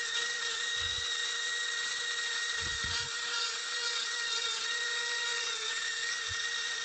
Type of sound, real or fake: fake